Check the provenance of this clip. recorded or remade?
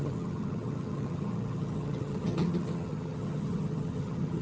remade